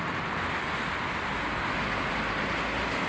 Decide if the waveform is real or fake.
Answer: real